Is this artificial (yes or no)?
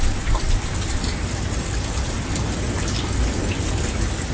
no